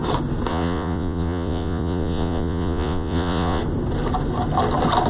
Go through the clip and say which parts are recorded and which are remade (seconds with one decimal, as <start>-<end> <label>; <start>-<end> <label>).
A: 0.0-0.5 recorded; 0.5-3.6 remade; 3.6-5.1 recorded